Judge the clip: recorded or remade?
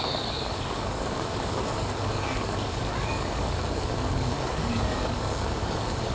remade